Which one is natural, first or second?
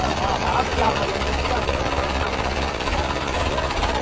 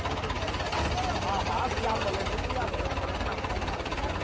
second